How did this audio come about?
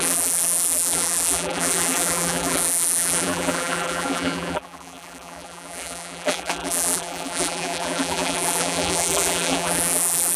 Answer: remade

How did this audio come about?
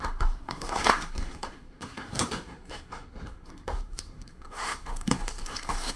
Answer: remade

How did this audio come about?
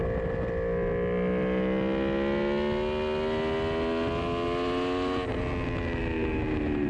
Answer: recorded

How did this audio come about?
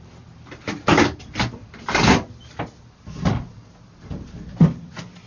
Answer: recorded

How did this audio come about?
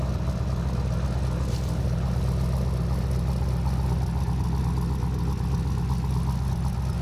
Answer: recorded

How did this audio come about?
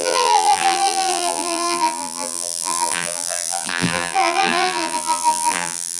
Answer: remade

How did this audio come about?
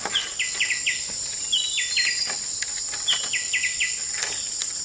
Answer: recorded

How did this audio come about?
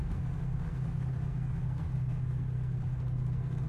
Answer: remade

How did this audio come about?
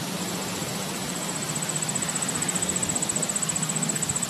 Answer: recorded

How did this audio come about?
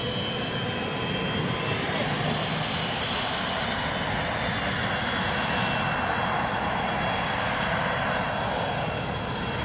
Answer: recorded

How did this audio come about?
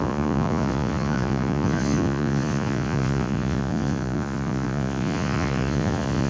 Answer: remade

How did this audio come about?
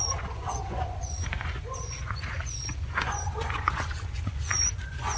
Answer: remade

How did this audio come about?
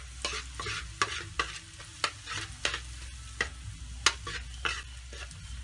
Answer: recorded